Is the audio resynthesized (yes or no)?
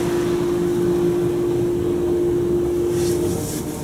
no